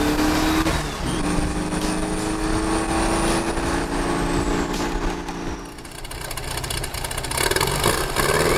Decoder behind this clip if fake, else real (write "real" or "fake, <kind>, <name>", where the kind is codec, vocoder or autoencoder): real